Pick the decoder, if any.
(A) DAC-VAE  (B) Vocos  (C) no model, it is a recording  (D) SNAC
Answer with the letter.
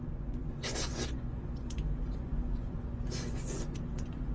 B